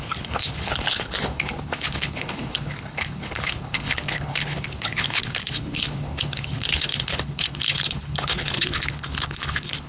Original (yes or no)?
no